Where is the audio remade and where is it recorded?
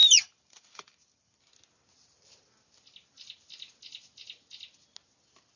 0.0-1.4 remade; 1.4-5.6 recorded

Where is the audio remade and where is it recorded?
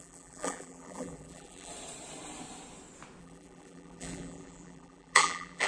0.0-1.7 remade; 1.7-3.2 recorded; 3.2-5.7 remade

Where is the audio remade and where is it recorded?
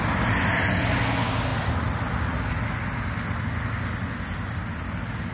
0.0-5.3 recorded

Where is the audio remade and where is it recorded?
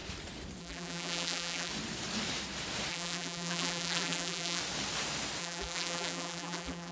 0.0-0.6 recorded; 0.6-1.7 remade; 1.7-2.9 recorded; 2.9-4.6 remade; 4.6-5.4 recorded; 5.4-6.9 remade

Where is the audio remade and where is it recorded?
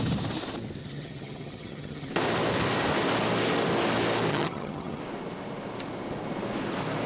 0.0-0.8 recorded; 0.8-2.1 remade; 2.1-4.3 recorded; 4.3-5.0 remade; 5.0-7.1 recorded